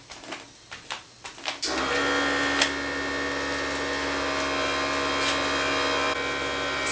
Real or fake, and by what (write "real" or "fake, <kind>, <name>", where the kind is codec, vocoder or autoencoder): real